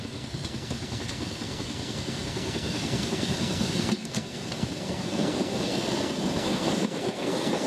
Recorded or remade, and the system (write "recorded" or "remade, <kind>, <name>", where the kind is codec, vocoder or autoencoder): remade, codec, SNAC